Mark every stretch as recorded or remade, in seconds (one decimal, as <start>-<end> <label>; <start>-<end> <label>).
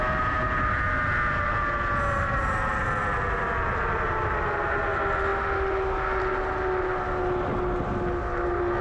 0.0-3.0 recorded; 3.0-4.6 remade; 4.6-8.8 recorded